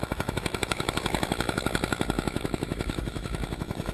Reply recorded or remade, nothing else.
remade